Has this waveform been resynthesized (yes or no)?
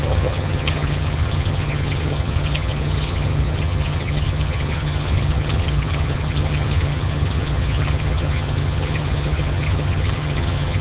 yes